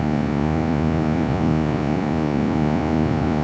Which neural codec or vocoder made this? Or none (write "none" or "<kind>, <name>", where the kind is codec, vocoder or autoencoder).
vocoder, Vocos